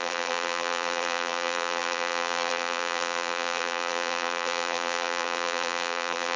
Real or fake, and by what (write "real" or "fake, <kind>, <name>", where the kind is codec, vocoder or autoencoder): fake, vocoder, BigVGAN v2